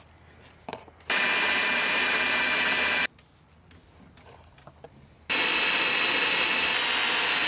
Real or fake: real